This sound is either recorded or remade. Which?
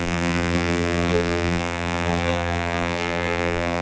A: remade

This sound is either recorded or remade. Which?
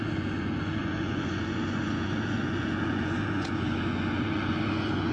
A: remade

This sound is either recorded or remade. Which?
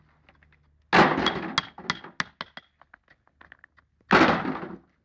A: recorded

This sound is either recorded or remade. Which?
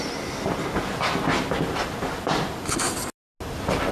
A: recorded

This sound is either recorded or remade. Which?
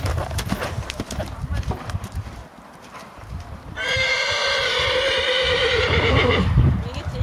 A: remade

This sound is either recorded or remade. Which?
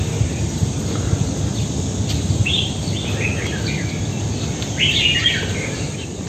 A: remade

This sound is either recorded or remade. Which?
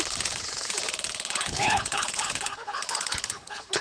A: remade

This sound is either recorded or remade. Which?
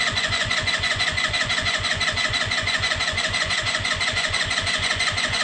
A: remade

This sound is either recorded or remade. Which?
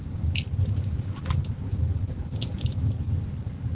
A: recorded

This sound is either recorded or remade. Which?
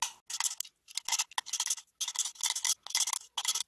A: recorded